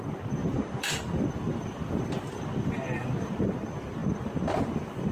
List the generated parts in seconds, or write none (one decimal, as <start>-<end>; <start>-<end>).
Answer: 0.4-3.5